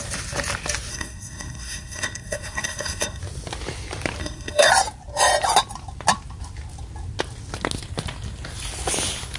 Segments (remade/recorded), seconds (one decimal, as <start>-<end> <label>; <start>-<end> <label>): 0.0-0.9 recorded; 0.9-3.2 remade; 3.2-4.2 recorded; 4.2-4.7 remade; 4.7-9.4 recorded

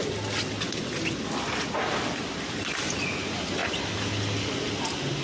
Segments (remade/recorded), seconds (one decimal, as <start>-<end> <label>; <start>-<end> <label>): 0.0-5.2 recorded

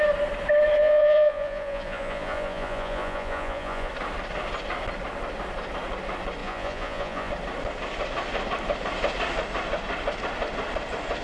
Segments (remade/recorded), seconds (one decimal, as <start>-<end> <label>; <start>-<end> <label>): 0.0-0.8 recorded; 0.8-3.9 remade; 3.9-6.4 recorded; 6.4-7.3 remade; 7.3-11.2 recorded

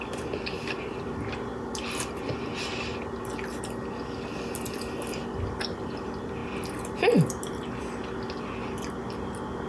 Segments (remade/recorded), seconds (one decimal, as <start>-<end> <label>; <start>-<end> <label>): 0.0-9.7 recorded

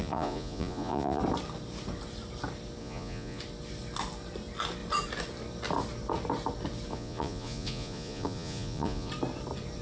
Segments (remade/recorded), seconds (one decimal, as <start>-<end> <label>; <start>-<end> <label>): 0.0-1.2 remade; 1.2-2.8 recorded; 2.8-3.4 remade; 3.4-6.9 recorded; 6.9-9.1 remade; 9.1-9.8 recorded

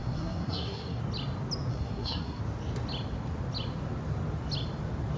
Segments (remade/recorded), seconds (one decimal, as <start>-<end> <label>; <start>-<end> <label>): 0.0-1.0 remade; 1.0-1.7 recorded; 1.7-2.4 remade; 2.4-5.2 recorded

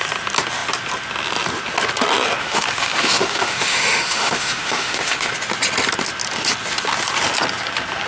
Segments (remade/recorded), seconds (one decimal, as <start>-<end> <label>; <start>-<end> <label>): 0.0-2.4 recorded; 2.4-5.3 remade; 5.3-8.1 recorded

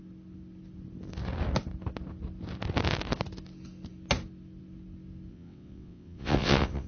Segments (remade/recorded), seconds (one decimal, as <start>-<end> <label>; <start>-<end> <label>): 0.0-5.3 recorded; 5.3-6.9 remade